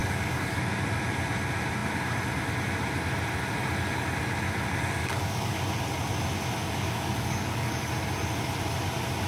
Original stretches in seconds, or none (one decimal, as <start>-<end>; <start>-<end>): 0.6-5.0; 5.6-6.6; 7.9-9.3